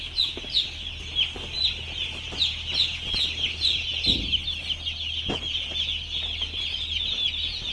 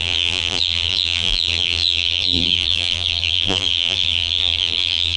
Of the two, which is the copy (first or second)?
second